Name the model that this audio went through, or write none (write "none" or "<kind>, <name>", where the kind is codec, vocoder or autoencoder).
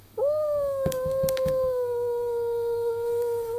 codec, DAC